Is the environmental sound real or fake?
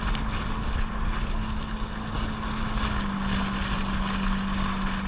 real